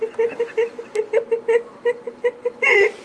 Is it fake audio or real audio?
real